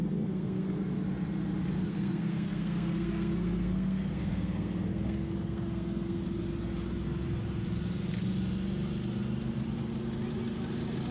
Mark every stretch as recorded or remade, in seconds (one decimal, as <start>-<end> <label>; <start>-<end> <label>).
0.0-0.8 remade; 0.8-1.8 recorded; 1.8-6.2 remade; 6.2-11.1 recorded